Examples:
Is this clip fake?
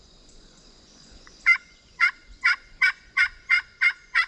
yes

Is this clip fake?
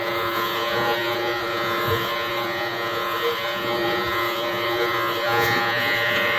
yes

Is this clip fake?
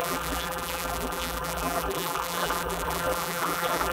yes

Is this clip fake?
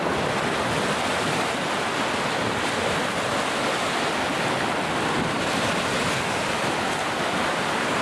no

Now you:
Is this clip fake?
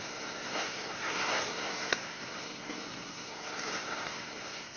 yes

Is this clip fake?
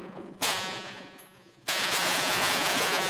yes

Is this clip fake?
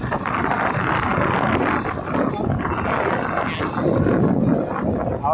no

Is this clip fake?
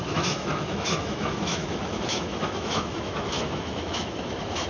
yes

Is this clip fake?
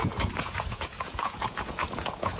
yes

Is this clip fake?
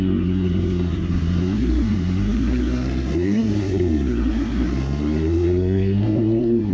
yes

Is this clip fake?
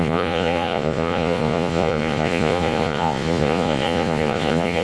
yes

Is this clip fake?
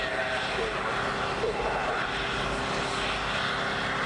no